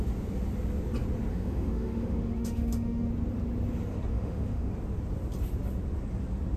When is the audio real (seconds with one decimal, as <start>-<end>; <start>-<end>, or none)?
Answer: 0.0-1.3; 3.1-4.1; 4.7-6.6